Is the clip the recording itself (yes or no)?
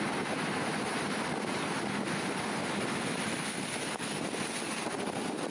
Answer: yes